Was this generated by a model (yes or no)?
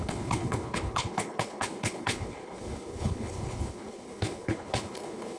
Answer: yes